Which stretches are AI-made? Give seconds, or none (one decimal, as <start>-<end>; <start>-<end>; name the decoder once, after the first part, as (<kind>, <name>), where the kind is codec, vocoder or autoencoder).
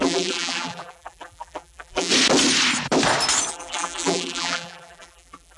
0.0-2.1 (vocoder, BigVGAN v2); 3.5-5.6